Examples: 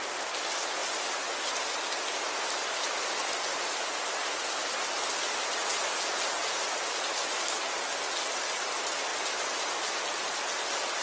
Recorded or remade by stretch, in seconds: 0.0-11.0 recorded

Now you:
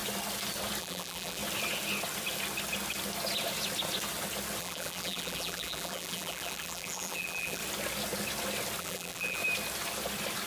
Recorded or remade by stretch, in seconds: 0.0-0.8 recorded; 0.8-1.4 remade; 1.4-4.6 recorded; 4.6-7.6 remade; 7.6-8.8 recorded; 8.8-9.4 remade; 9.4-10.5 recorded

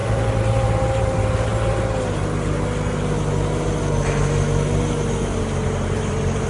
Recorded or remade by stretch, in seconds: 0.0-1.5 remade; 1.5-5.4 recorded; 5.4-6.5 remade

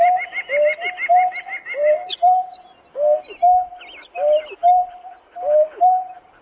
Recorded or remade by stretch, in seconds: 0.0-6.4 recorded

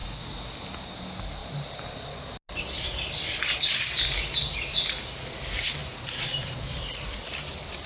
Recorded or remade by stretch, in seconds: 0.0-5.8 recorded; 5.8-7.0 remade; 7.0-7.9 recorded

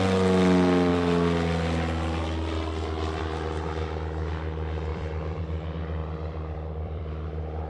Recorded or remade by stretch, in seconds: 0.0-4.9 recorded; 4.9-5.4 remade; 5.4-6.0 recorded; 6.0-7.1 remade; 7.1-7.7 recorded